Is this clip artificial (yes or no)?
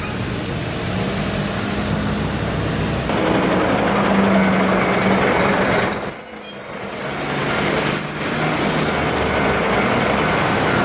no